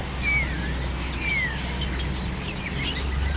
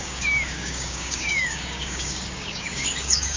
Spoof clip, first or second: second